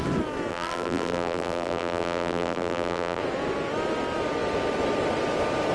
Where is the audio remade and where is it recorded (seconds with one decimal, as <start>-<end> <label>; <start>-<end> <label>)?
0.0-0.5 recorded; 0.5-3.2 remade; 3.2-5.7 recorded